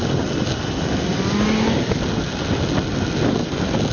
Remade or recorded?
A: recorded